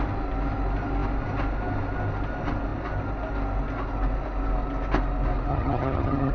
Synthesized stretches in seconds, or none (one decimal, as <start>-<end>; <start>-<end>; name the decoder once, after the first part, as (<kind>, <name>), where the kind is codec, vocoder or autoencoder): 5.5-6.3 (vocoder, HiFi-GAN)